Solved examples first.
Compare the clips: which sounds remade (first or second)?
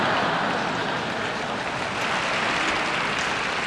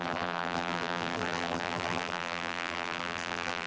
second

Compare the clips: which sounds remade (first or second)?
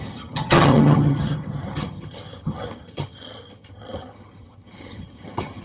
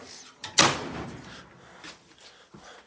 first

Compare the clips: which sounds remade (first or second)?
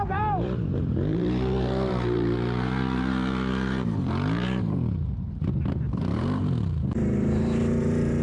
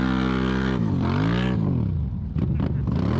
first